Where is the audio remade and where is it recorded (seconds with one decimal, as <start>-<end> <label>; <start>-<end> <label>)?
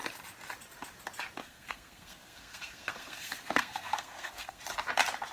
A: 0.0-1.4 recorded; 1.4-4.6 remade; 4.6-5.3 recorded